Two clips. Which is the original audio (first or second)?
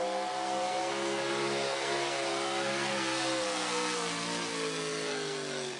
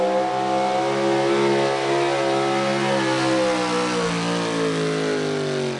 second